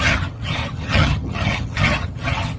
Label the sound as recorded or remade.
remade